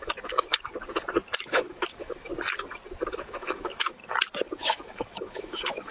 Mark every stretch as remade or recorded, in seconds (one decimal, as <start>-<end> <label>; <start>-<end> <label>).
0.0-0.5 remade; 0.5-1.5 recorded; 1.5-2.3 remade; 2.3-3.1 recorded; 3.1-4.0 remade; 4.0-4.6 recorded; 4.6-5.9 remade